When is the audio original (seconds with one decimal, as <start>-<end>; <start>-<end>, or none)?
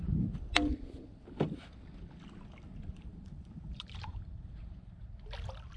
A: 0.0-2.7; 5.1-5.8